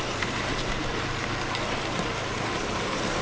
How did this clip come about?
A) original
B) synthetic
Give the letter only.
B